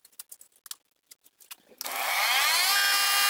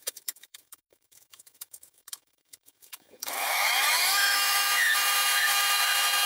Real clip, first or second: first